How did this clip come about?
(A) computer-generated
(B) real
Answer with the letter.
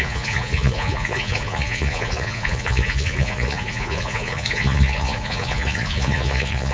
A